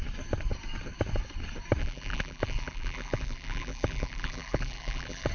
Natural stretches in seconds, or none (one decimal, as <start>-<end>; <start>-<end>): 0.0-1.8